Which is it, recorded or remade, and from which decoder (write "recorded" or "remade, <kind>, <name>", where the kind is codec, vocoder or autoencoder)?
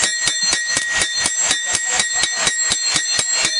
recorded